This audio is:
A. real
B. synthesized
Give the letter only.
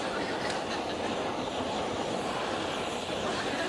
A